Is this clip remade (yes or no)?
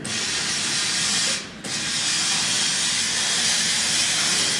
no